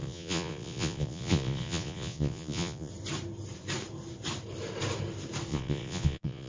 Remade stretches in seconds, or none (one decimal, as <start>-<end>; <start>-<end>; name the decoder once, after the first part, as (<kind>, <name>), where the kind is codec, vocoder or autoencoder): 0.0-2.9 (vocoder, Vocos); 5.5-6.5